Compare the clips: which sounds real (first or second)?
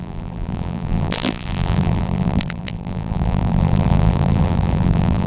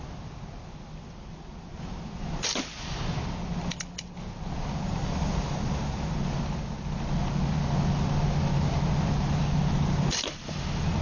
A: second